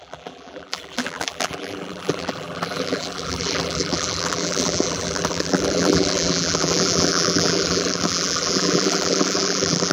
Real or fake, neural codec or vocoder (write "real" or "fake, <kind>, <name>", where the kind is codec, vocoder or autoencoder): fake, vocoder, BigVGAN v2